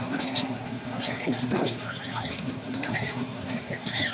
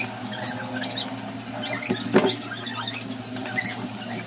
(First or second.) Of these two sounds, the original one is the second